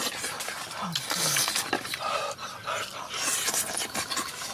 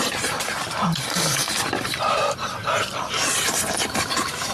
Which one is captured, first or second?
first